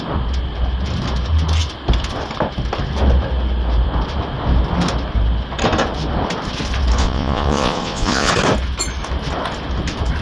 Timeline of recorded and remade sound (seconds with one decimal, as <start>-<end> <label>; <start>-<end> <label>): 0.0-7.0 recorded; 7.0-8.3 remade; 8.3-10.2 recorded